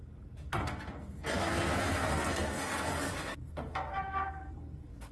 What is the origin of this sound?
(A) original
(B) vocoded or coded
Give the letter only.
B